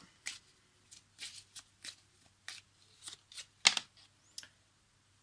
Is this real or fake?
real